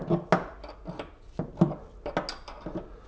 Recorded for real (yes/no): yes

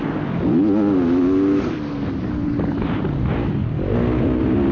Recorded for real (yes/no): yes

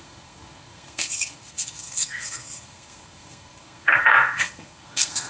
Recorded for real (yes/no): no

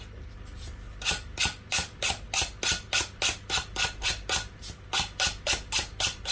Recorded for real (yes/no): yes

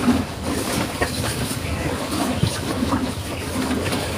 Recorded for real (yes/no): no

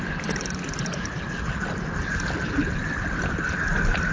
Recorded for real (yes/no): yes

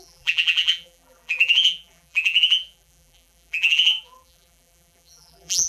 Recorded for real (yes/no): no